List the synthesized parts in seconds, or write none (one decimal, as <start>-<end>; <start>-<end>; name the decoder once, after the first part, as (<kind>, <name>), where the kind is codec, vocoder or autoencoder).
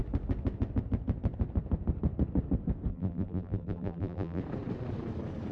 2.9-4.4 (vocoder, BigVGAN v2)